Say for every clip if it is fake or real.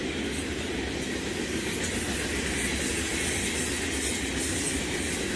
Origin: real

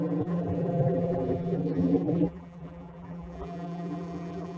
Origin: fake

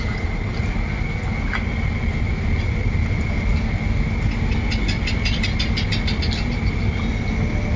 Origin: real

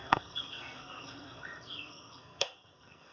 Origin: fake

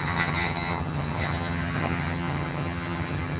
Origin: fake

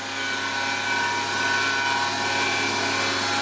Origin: real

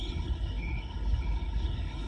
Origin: fake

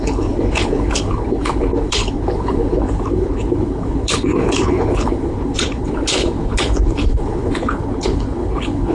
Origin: fake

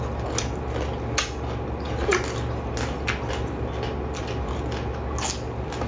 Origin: real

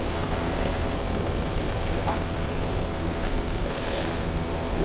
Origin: fake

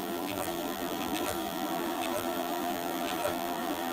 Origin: fake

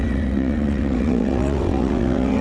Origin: fake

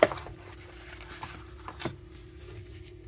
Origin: real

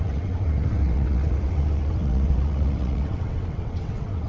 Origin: fake